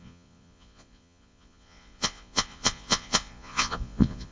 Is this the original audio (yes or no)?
no